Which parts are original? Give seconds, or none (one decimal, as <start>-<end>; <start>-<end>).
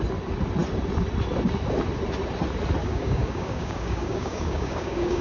0.0-2.8